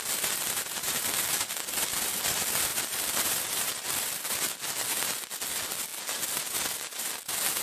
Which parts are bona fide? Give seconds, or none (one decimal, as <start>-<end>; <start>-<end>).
0.0-2.7; 4.3-7.6